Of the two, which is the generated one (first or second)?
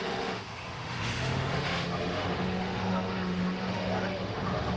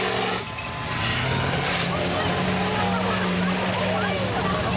first